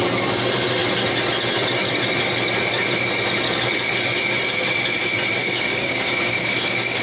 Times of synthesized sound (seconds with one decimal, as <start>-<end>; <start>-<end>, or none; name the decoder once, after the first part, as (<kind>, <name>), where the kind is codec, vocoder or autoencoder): 5.4-7.0 (codec, DAC)